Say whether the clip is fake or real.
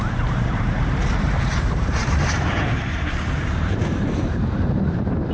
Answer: fake